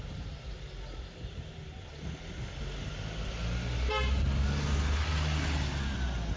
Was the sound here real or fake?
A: real